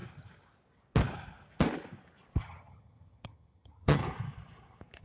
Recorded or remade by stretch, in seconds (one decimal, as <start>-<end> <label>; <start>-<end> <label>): 0.0-2.4 recorded; 2.4-4.0 remade; 4.0-5.0 recorded